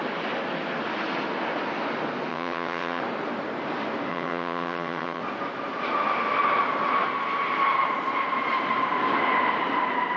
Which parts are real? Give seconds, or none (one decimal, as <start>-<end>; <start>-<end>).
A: 0.0-2.3; 3.0-4.1; 5.2-10.2